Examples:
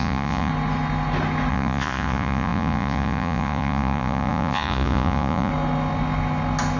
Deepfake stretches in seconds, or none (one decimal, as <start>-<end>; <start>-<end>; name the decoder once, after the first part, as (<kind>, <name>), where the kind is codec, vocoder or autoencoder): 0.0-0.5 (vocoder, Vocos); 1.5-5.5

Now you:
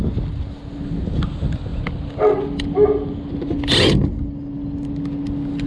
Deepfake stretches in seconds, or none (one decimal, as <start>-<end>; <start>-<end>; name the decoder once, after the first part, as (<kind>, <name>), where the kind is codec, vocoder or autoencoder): none

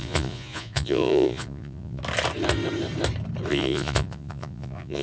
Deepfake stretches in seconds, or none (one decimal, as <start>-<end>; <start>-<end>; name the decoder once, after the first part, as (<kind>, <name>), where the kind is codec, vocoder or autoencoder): 0.0-2.0 (vocoder, Vocos); 3.5-5.0

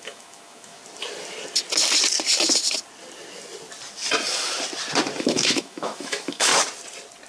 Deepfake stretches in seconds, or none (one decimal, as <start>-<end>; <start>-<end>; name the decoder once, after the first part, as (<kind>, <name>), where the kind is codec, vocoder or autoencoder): 0.0-0.8 (autoencoder, DAC-VAE); 5.2-6.5

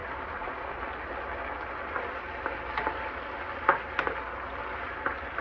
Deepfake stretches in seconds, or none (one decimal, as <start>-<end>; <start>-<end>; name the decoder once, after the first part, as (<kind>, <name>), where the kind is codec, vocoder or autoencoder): none

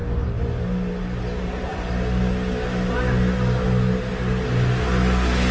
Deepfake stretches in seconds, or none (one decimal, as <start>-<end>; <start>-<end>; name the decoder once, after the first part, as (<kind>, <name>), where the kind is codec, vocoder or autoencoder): none

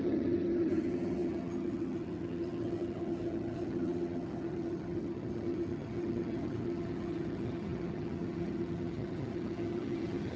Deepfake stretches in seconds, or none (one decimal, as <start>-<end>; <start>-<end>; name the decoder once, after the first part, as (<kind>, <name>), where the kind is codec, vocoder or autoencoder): 0.0-10.4 (vocoder, HiFi-GAN)